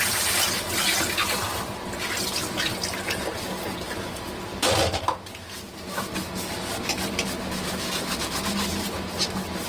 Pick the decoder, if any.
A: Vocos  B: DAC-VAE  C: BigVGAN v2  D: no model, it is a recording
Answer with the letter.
D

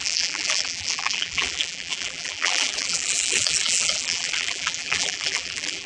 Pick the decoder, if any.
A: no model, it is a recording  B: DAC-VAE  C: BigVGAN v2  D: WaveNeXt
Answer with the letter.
C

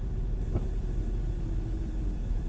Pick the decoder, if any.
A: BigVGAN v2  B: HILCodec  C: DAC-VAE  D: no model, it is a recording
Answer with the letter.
D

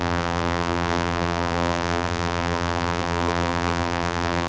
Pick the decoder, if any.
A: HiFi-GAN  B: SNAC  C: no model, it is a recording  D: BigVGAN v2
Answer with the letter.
D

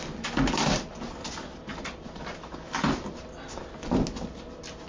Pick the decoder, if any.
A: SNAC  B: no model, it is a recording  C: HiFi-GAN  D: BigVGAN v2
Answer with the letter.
B